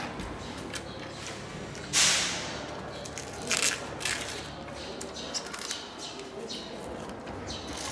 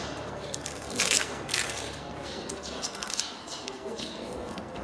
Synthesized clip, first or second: second